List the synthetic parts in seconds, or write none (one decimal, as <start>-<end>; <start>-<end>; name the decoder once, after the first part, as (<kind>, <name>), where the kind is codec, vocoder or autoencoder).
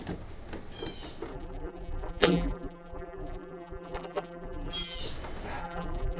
1.3-5.0 (vocoder, BigVGAN v2); 5.6-6.2